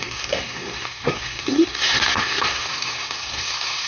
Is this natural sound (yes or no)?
no